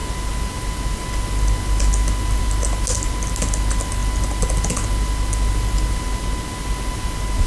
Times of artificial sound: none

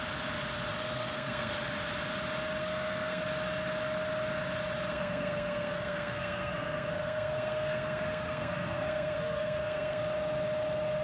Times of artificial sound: 0.7-1.5 (codec, SNAC); 2.6-3.2; 4.9-10.0